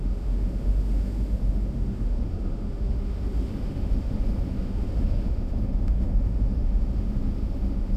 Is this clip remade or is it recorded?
remade